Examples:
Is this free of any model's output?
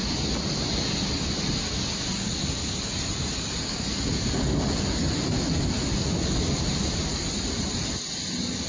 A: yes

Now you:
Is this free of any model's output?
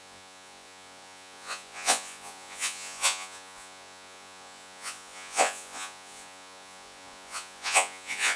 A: no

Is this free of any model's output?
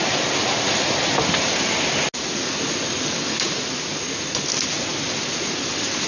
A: yes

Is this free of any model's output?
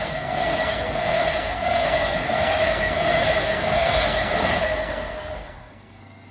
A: no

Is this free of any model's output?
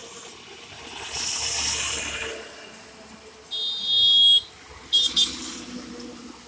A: yes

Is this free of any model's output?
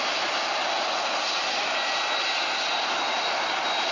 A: yes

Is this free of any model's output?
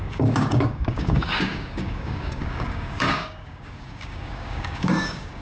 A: no